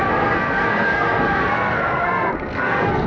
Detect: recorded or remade remade